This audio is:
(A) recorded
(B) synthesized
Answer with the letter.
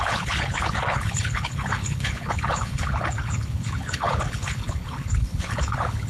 B